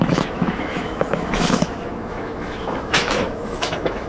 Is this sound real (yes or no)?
no